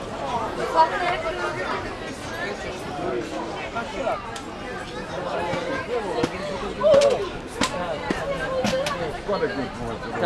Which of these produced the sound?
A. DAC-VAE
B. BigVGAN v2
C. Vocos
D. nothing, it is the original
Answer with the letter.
D